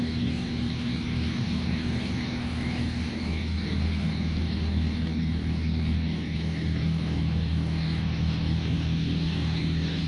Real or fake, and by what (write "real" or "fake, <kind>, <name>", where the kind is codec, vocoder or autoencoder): fake, codec, DAC